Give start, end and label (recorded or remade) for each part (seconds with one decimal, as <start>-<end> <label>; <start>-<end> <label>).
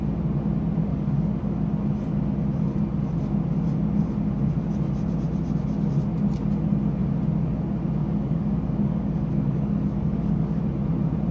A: 0.0-0.9 recorded; 0.9-1.6 remade; 1.6-8.0 recorded; 8.0-10.6 remade; 10.6-11.3 recorded